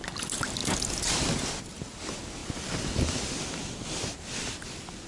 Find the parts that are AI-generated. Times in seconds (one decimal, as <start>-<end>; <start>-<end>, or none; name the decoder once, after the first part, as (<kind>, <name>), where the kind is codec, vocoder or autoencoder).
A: none